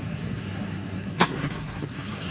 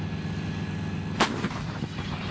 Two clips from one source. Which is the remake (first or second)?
first